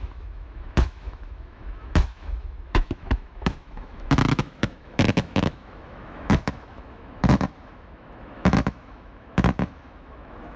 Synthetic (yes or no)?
yes